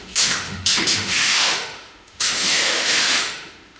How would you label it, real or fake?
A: fake